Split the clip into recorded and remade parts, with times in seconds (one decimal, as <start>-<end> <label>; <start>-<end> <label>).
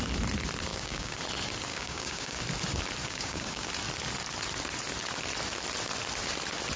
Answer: 0.0-0.7 recorded; 0.7-1.2 remade; 1.2-1.7 recorded; 1.7-2.4 remade; 2.4-3.0 recorded; 3.0-3.7 remade; 3.7-6.8 recorded